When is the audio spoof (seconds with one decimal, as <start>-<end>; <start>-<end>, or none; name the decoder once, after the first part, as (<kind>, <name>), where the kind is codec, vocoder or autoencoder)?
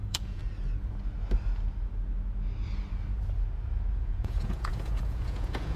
0.0-0.4 (vocoder, Vocos); 3.9-5.8